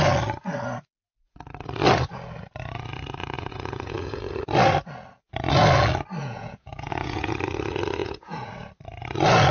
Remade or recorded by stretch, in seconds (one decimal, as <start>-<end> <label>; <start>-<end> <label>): 0.0-3.2 recorded; 3.2-4.4 remade; 4.4-6.2 recorded; 6.2-7.3 remade; 7.3-8.0 recorded; 8.0-8.5 remade; 8.5-9.5 recorded